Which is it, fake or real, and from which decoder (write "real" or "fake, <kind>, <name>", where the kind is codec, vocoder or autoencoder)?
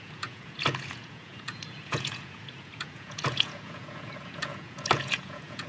fake, vocoder, Vocos